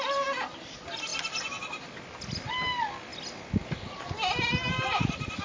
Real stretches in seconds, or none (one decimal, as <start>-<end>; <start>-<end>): 0.0-5.4